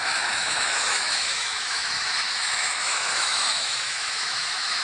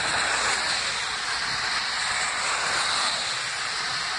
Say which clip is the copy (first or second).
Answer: first